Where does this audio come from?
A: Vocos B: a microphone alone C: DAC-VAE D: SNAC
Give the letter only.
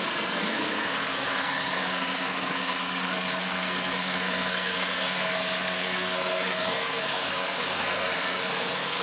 D